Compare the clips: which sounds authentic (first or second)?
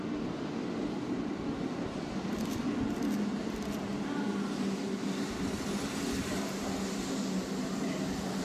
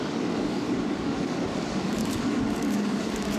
first